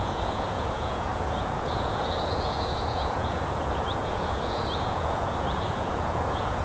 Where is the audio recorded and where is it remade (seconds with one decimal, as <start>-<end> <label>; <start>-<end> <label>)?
0.0-6.6 remade